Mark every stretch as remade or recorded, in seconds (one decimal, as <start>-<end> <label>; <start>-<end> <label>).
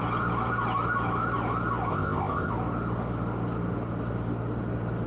0.0-1.9 recorded; 1.9-2.5 remade; 2.5-5.1 recorded